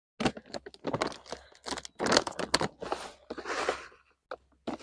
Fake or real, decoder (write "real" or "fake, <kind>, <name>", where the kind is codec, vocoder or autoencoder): real